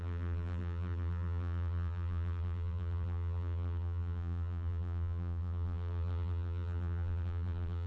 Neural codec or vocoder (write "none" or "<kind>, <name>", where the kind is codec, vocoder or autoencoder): vocoder, BigVGAN v2